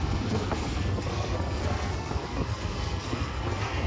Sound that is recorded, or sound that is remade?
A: remade